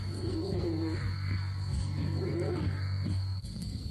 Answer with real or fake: fake